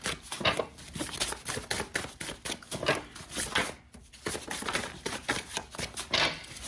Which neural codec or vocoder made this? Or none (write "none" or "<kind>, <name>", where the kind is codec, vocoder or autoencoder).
none